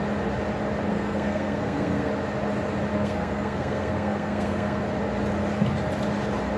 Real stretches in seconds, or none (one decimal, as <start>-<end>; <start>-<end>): 0.0-0.9; 2.1-2.9; 4.8-6.6